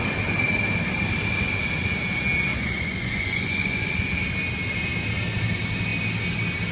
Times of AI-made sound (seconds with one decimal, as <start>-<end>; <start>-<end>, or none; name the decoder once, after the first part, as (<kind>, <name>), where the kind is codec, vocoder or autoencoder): 2.5-3.9 (vocoder, Vocos)